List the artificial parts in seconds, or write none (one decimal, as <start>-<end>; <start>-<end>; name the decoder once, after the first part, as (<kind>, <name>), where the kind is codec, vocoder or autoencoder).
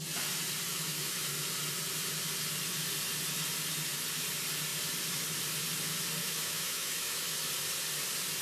0.7-1.3 (autoencoder, DAC-VAE); 6.2-7.5